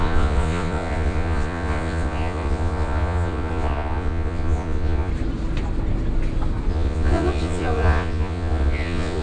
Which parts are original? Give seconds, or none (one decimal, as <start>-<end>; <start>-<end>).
5.1-6.7